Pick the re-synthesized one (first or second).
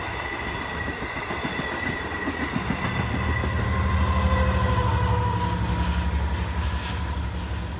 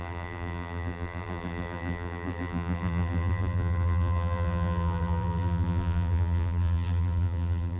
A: second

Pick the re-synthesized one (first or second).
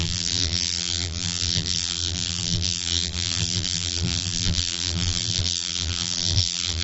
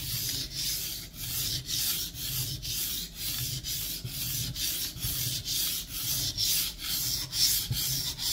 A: first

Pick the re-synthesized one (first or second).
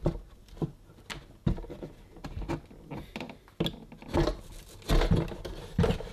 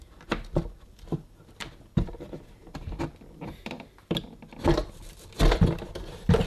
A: second